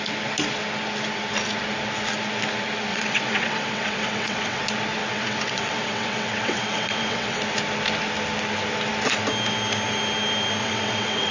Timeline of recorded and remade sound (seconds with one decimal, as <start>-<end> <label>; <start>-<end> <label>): 0.0-2.9 recorded; 2.9-4.6 remade; 4.6-5.0 recorded; 5.0-7.4 remade; 7.4-10.6 recorded; 10.6-11.3 remade